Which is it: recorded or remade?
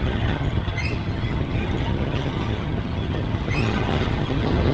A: remade